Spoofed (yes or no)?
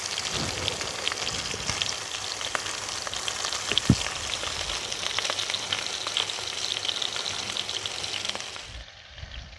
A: no